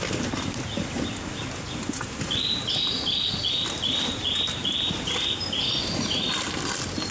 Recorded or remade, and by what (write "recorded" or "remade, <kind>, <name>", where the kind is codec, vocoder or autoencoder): recorded